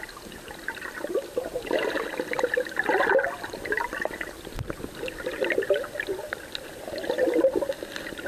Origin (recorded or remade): recorded